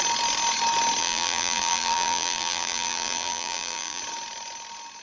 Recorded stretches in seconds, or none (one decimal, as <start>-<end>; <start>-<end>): 0.0-1.0; 4.0-5.0